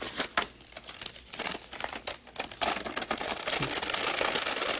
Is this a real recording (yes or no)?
yes